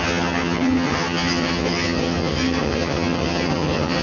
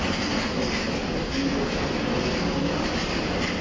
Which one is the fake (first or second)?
first